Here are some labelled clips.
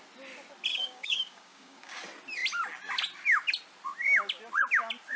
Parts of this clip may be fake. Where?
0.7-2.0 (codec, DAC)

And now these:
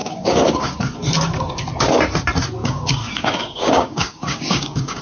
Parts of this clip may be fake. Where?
0.0-0.8 (codec, DAC); 2.6-5.0

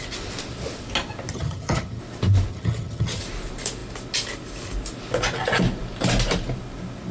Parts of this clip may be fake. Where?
1.3-2.0 (vocoder, HiFi-GAN); 2.5-3.2